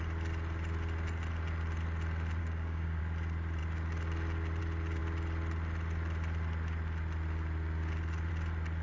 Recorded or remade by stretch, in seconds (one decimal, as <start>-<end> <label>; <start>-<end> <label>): 0.0-2.4 recorded; 2.4-3.0 remade; 3.0-8.8 recorded